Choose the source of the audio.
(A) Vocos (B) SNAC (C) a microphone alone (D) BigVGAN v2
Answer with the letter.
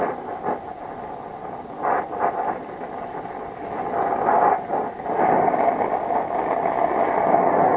C